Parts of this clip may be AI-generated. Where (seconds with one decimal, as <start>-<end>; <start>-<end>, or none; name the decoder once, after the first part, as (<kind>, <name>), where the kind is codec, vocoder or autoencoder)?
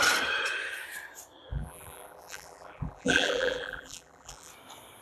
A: 1.5-4.5 (vocoder, BigVGAN v2)